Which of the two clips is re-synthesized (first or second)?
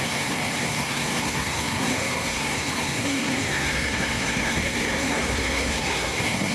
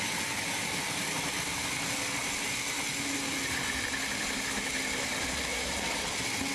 first